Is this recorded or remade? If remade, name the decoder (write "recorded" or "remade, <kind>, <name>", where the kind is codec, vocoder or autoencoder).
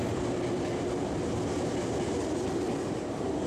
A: recorded